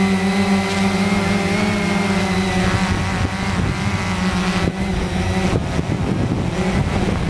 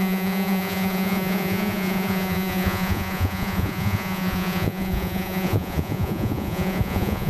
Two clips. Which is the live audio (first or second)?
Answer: first